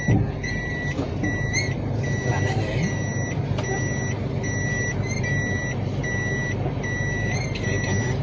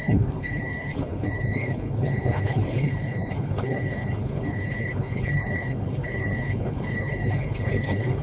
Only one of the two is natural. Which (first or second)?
first